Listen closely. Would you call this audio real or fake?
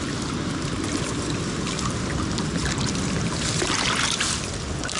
real